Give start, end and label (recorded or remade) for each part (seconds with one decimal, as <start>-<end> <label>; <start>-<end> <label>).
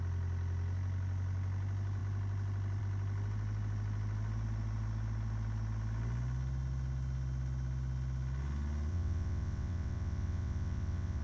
0.0-8.9 recorded; 8.9-11.2 remade